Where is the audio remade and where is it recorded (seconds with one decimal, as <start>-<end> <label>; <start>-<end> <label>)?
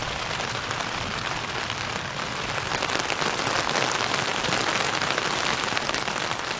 0.0-6.6 recorded